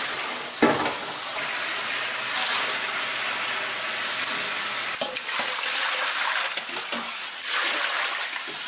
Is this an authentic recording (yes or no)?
yes